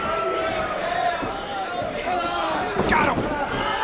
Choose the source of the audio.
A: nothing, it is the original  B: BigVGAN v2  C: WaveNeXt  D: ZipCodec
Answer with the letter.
B